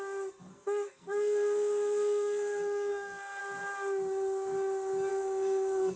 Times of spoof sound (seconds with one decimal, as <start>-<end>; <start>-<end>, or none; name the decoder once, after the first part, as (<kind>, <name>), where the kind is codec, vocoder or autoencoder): 0.5-3.4 (codec, SNAC); 5.1-6.0